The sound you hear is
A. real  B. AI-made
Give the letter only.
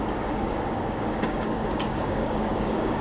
B